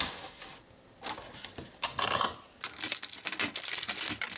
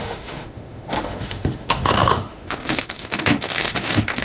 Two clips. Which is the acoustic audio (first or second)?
first